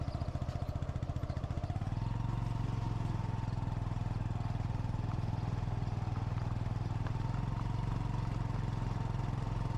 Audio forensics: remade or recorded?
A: recorded